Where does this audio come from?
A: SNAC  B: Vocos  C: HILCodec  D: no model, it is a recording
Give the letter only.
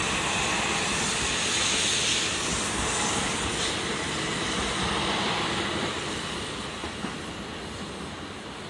D